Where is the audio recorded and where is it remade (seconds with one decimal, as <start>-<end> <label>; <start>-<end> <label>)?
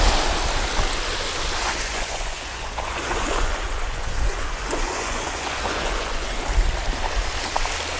0.0-1.6 recorded; 1.6-6.4 remade; 6.4-8.0 recorded